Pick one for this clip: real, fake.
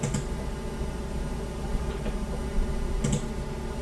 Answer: real